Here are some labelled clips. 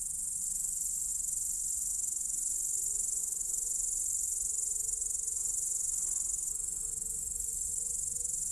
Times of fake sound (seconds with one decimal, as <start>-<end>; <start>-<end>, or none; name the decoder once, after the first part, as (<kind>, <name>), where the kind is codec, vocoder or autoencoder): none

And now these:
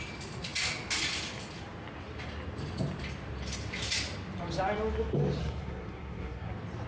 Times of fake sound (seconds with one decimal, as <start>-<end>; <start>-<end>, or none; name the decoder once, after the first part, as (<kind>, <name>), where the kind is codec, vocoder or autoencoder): 5.4-6.5 (codec, SNAC)

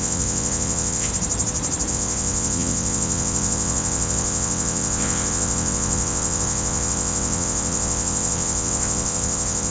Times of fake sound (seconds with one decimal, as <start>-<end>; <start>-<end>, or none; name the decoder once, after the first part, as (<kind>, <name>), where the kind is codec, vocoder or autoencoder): 0.0-1.1 (vocoder, WaveNeXt); 1.9-9.7

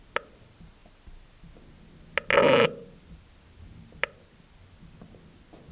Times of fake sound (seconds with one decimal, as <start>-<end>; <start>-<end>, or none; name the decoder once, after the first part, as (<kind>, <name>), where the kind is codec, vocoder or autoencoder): none

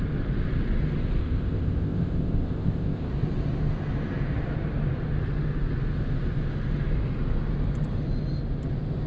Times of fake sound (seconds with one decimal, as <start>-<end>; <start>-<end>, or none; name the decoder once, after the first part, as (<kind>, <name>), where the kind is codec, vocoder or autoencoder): 1.2-3.1 (codec, ZipCodec)

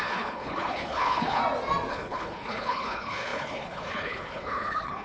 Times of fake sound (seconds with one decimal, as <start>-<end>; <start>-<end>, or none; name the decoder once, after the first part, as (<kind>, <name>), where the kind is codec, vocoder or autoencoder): 0.0-1.4 (codec, HILCodec); 1.9-5.0